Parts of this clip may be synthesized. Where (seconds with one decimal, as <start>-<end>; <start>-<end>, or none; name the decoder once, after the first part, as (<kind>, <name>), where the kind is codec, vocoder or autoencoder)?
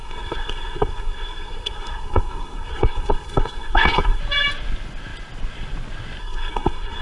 0.0-4.2 (codec, SNAC); 6.2-7.0